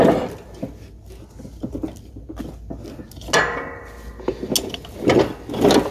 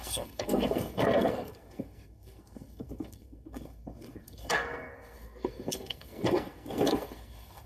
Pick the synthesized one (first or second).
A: second